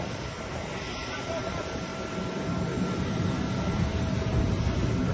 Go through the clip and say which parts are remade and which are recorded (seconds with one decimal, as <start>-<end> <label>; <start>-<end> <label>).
0.0-5.1 recorded